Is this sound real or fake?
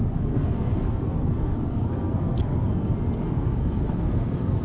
fake